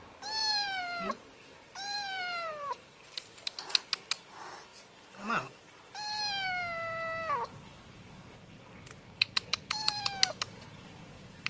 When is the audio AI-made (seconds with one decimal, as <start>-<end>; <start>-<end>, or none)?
0.4-3.6